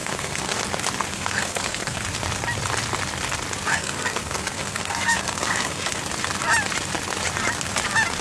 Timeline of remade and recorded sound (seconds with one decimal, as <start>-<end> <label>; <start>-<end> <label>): 0.0-0.6 remade; 0.6-1.1 recorded; 1.1-2.0 remade; 2.0-3.7 recorded; 3.7-6.0 remade; 6.0-8.2 recorded